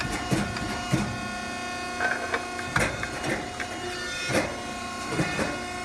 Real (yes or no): yes